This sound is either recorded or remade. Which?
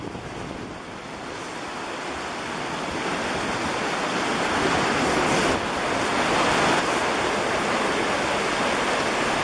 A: recorded